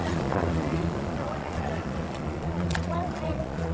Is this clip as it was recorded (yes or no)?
no